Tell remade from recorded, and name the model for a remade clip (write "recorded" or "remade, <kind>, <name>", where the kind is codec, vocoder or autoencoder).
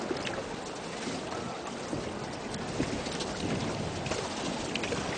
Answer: recorded